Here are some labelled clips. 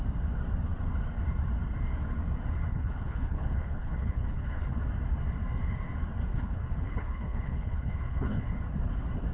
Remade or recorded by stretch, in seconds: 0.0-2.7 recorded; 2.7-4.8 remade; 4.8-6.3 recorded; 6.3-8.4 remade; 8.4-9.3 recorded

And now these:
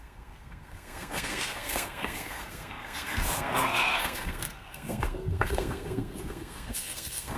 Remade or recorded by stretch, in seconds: 0.0-7.4 remade

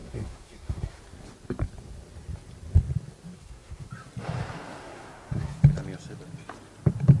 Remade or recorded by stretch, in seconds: 0.0-1.0 remade; 1.0-3.3 recorded; 3.3-3.9 remade; 3.9-4.8 recorded; 4.8-5.6 remade; 5.6-7.2 recorded

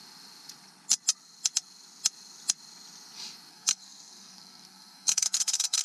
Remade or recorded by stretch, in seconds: 0.0-3.5 recorded; 3.5-5.8 remade

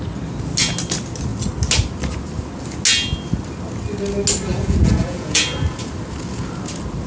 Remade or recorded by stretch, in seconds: 0.0-4.5 recorded; 4.5-5.4 remade; 5.4-7.1 recorded

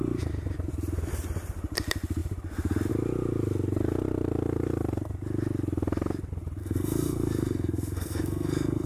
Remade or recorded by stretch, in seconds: 0.0-6.6 recorded; 6.6-8.9 remade

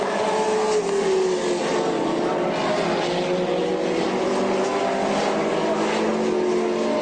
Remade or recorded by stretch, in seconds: 0.0-7.0 recorded